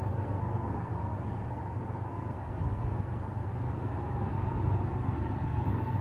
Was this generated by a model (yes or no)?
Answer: yes